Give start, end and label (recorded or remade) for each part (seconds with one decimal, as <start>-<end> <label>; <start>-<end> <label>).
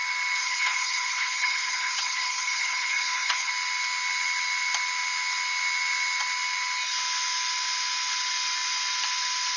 0.0-0.4 recorded; 0.4-3.5 remade; 3.5-9.6 recorded